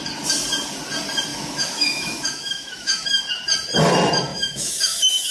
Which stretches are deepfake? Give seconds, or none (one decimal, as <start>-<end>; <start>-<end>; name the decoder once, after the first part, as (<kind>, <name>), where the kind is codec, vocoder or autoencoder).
1.3-3.2 (autoencoder, DAC-VAE); 4.3-5.3